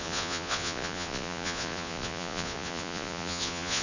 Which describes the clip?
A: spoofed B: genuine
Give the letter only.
A